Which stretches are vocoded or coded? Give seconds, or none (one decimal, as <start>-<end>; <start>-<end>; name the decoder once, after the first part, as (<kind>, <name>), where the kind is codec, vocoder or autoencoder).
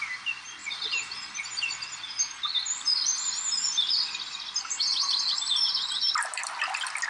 0.6-1.4 (vocoder, BigVGAN v2)